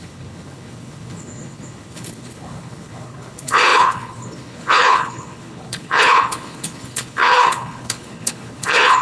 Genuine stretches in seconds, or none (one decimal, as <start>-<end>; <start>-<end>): none